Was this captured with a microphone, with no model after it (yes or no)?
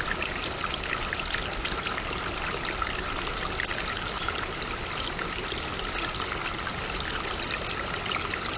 yes